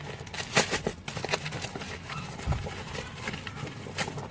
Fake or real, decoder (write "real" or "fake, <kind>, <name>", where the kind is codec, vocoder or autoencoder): real